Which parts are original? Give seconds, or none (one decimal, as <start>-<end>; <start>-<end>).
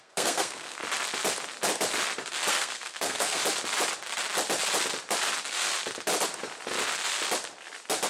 0.8-2.5; 3.4-8.1